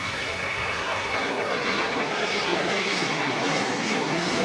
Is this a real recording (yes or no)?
no